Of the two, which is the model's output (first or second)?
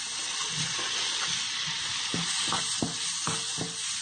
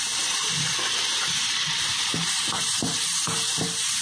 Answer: second